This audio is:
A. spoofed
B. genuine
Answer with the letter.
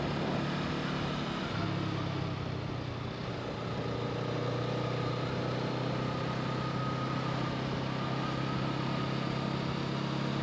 B